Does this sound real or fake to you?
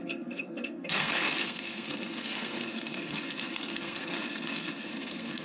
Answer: fake